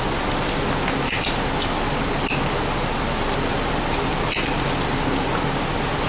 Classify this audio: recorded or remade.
recorded